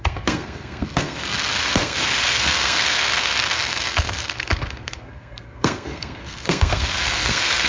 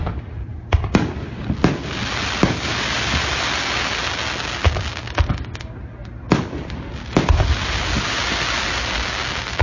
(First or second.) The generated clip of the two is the first